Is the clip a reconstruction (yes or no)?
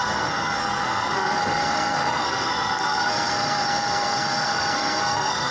yes